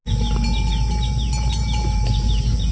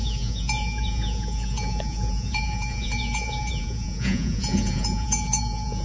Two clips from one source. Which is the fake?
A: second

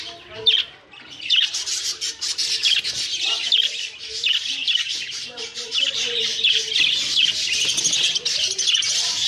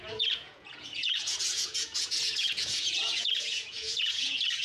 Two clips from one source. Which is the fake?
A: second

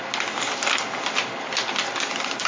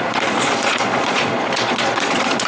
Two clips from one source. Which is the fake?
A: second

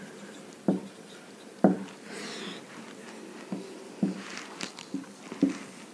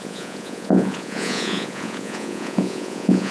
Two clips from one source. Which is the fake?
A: second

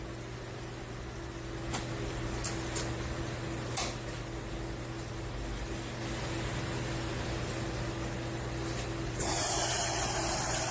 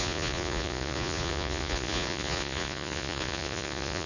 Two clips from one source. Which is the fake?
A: second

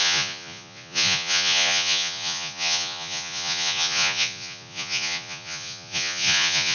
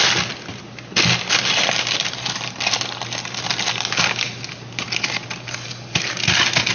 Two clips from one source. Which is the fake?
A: first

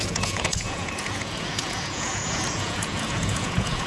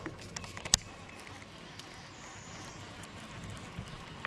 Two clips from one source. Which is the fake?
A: first